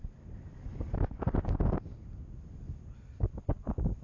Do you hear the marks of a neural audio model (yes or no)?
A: no